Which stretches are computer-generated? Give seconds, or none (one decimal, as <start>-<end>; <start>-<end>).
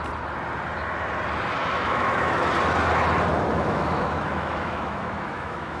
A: 1.6-2.5; 3.5-5.8